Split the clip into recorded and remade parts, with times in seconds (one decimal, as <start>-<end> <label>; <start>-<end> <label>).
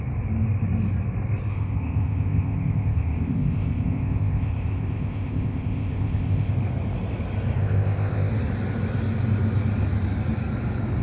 0.0-1.5 recorded; 1.5-6.5 remade; 6.5-7.6 recorded; 7.6-8.3 remade; 8.3-11.0 recorded